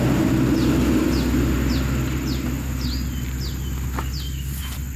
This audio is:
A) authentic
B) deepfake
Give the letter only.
A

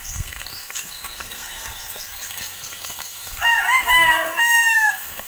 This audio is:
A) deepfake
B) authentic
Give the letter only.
A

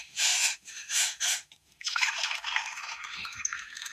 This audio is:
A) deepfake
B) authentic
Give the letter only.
A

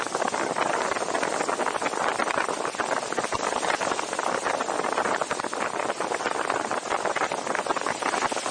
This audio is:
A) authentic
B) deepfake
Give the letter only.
A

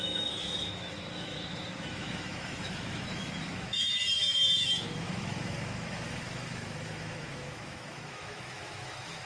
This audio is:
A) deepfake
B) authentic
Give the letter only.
A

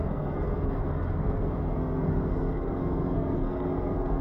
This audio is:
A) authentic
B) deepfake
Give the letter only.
B